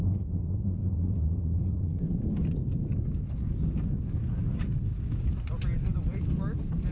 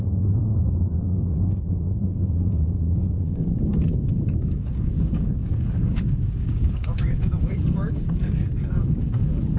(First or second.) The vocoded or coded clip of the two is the second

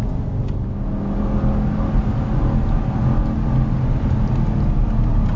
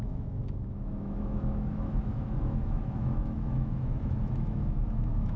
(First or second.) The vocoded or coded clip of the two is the second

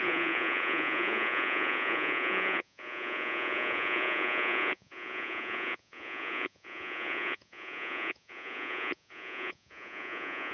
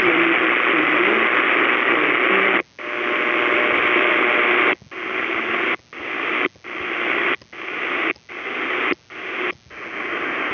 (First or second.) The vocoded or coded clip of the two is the first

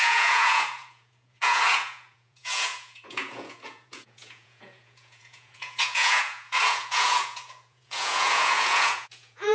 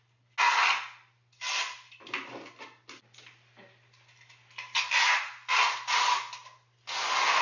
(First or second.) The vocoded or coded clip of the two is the first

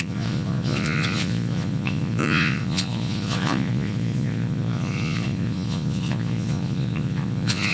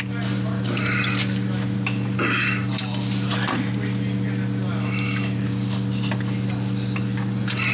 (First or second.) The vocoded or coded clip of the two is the first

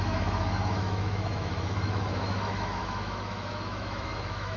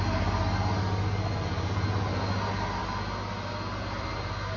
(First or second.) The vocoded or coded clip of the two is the first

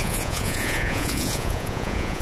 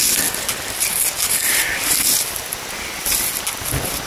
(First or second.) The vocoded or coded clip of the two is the first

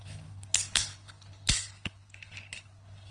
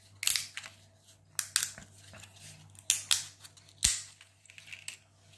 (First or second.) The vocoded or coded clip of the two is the first